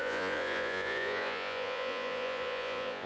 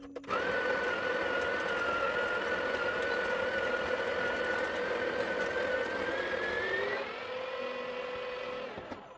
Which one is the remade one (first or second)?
first